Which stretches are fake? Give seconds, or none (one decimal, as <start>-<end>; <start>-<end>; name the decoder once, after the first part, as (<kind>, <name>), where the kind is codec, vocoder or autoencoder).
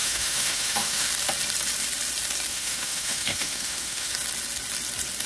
0.0-1.1 (autoencoder, DAC-VAE); 2.5-4.1